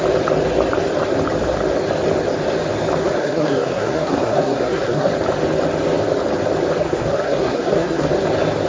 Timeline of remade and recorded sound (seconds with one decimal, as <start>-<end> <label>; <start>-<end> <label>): 0.0-3.0 recorded; 3.0-5.1 remade; 5.1-6.8 recorded; 6.8-8.1 remade; 8.1-8.7 recorded